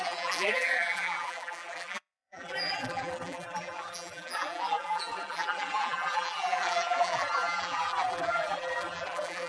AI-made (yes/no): yes